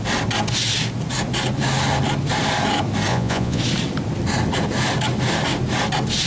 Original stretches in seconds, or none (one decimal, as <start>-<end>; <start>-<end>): 0.0-3.1; 3.6-6.3